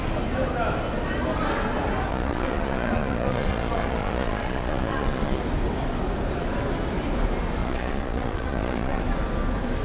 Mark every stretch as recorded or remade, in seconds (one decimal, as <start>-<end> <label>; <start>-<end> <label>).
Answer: 0.0-2.1 recorded; 2.1-5.4 remade; 5.4-7.6 recorded; 7.6-9.0 remade; 9.0-9.8 recorded